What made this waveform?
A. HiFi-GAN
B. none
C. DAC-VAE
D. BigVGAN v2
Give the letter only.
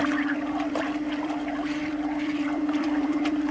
D